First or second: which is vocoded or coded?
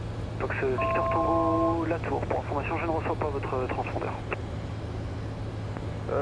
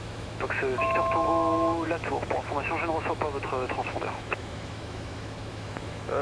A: second